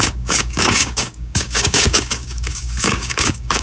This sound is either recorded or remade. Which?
remade